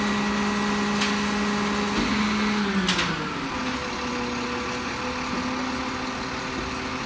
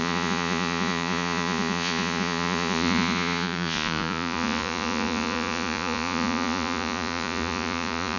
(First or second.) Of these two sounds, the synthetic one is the second